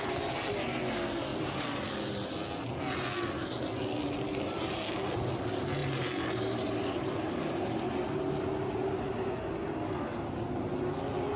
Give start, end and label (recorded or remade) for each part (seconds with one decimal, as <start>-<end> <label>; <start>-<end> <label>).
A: 0.0-1.3 recorded; 1.3-1.9 remade; 1.9-5.8 recorded; 5.8-7.4 remade; 7.4-11.4 recorded

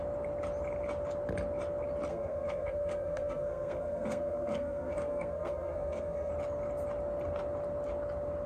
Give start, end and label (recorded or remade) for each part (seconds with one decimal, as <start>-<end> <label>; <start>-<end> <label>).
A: 0.0-2.1 recorded; 2.1-6.3 remade; 6.3-8.5 recorded

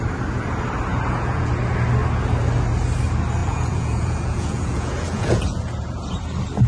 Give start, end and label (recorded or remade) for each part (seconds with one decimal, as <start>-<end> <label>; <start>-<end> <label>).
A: 0.0-0.9 recorded; 0.9-1.5 remade; 1.5-3.4 recorded; 3.4-6.2 remade; 6.2-6.7 recorded